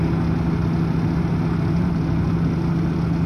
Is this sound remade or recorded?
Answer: recorded